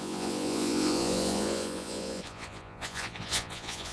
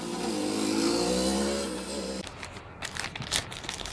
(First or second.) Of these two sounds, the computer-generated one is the first